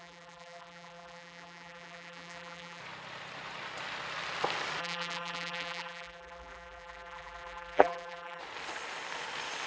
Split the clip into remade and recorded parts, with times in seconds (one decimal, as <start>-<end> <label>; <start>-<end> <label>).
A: 0.0-2.8 remade; 2.8-4.8 recorded; 4.8-8.4 remade; 8.4-9.7 recorded